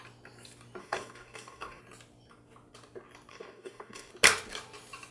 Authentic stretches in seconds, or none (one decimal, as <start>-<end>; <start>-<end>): 0.0-0.8; 1.8-3.3; 4.1-5.1